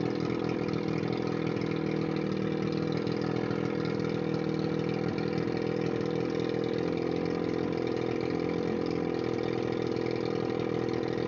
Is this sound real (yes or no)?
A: yes